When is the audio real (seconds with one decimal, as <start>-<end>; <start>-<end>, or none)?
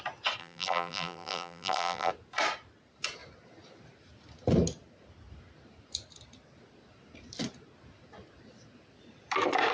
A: 0.0-0.4; 2.1-9.7